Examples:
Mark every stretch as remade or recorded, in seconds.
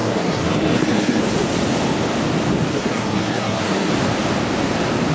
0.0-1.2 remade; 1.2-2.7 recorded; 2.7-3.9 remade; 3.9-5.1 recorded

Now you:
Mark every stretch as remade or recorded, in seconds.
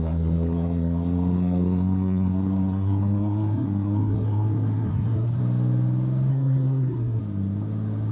0.0-5.4 remade; 5.4-6.3 recorded; 6.3-7.2 remade; 7.2-8.1 recorded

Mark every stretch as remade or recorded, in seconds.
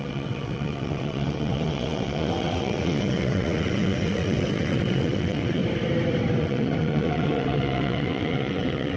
0.0-5.6 remade; 5.6-6.4 recorded; 6.4-9.0 remade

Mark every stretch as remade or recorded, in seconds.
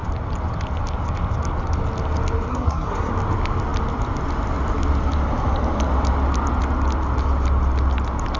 0.0-2.5 recorded; 2.5-3.1 remade; 3.1-8.4 recorded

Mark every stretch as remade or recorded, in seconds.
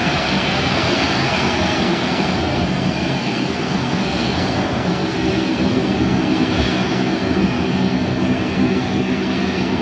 0.0-9.8 remade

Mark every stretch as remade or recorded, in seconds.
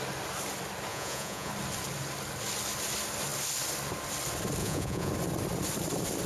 0.0-0.9 recorded; 0.9-1.5 remade; 1.5-4.6 recorded; 4.6-5.1 remade; 5.1-6.3 recorded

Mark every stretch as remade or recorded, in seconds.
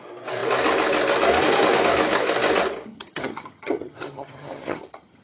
0.0-2.9 recorded; 2.9-5.2 remade